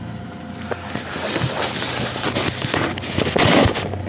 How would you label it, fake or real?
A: real